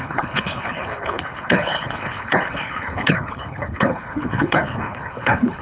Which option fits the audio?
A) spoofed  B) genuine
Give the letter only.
A